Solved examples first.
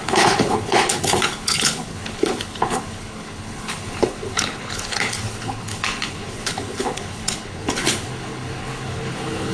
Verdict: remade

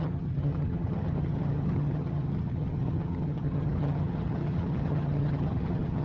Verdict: remade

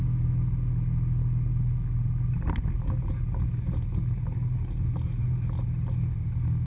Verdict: recorded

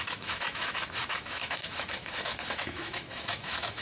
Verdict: remade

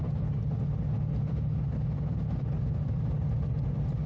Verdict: recorded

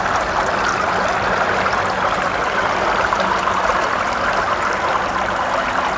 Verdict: recorded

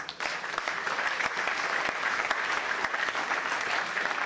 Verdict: recorded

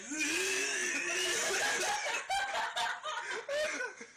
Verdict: recorded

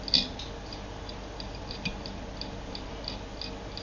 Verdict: recorded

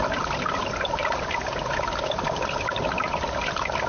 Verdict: recorded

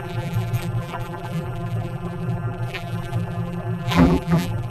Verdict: remade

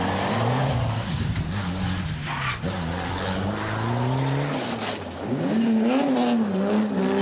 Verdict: recorded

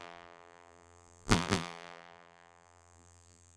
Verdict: remade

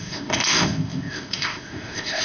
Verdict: remade